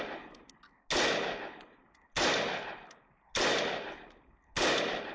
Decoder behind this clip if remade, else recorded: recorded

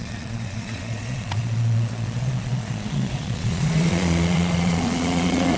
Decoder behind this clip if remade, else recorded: remade, vocoder, Vocos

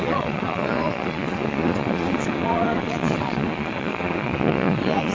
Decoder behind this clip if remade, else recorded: remade, vocoder, Vocos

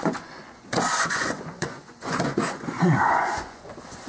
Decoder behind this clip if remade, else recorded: remade, vocoder, Vocos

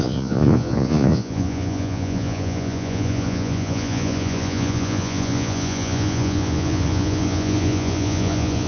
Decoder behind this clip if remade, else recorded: remade, vocoder, Vocos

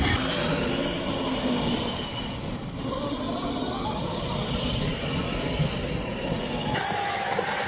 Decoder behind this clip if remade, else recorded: recorded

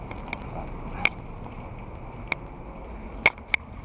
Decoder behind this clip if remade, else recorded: recorded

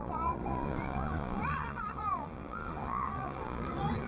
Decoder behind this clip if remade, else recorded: remade, vocoder, Vocos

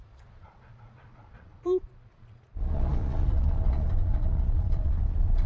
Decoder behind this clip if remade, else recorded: remade, vocoder, Vocos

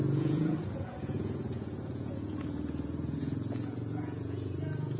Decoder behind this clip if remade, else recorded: remade, vocoder, Vocos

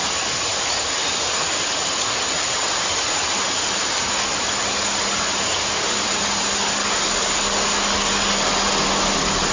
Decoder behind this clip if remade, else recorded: recorded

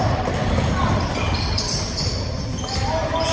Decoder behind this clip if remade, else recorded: recorded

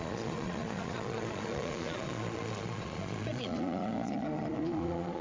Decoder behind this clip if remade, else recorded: remade, vocoder, Vocos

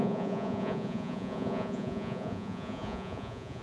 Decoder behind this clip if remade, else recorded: remade, vocoder, Vocos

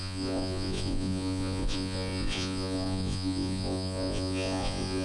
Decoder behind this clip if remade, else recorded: remade, vocoder, Vocos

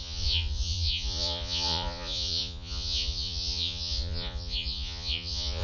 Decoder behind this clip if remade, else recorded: remade, vocoder, Vocos